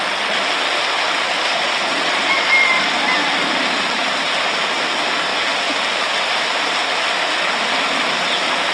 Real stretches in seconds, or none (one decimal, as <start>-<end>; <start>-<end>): 0.0-1.5; 2.3-8.7